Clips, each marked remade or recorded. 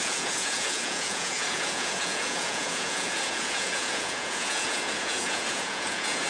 remade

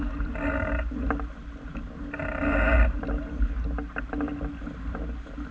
recorded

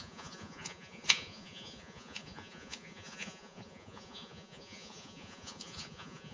remade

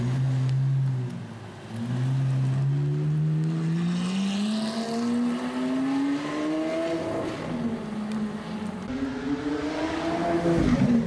recorded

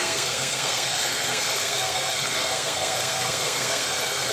remade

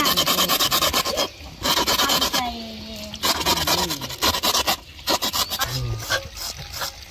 recorded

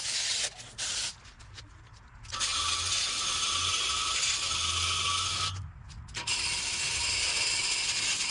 recorded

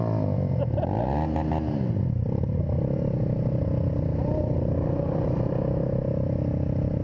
recorded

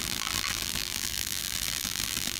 remade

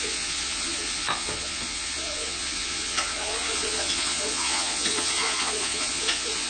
remade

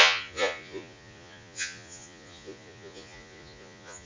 remade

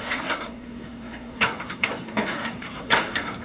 remade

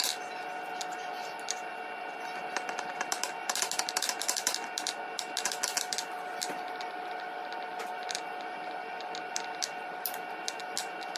recorded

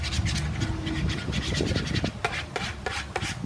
recorded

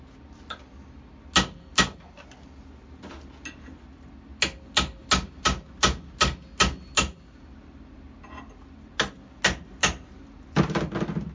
recorded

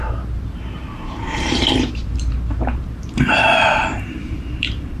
remade